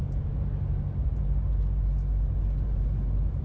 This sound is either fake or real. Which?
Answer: real